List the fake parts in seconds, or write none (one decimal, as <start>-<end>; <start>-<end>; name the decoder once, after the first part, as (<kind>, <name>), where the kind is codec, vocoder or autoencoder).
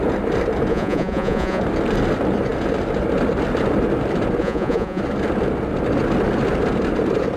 0.7-1.6 (vocoder, Vocos); 4.4-5.0